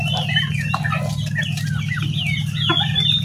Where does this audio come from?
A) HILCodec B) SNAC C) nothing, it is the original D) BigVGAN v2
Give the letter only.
C